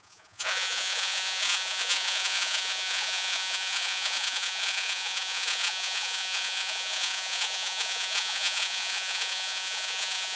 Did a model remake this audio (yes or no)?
yes